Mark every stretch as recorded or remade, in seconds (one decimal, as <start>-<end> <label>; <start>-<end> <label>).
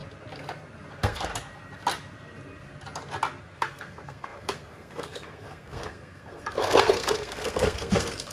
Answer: 0.0-0.9 recorded; 0.9-1.3 remade; 1.3-3.4 recorded; 3.4-8.3 remade